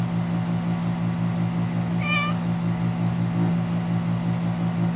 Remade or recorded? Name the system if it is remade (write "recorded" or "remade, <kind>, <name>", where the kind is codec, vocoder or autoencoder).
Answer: recorded